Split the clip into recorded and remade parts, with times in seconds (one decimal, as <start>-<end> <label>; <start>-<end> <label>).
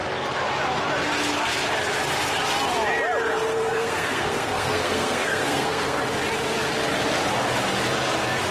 0.0-3.5 recorded; 3.5-6.0 remade; 6.0-8.5 recorded